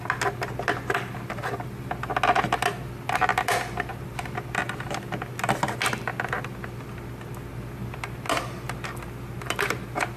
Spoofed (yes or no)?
no